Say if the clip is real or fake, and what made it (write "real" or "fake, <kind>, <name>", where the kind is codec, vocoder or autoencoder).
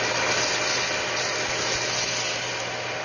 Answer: real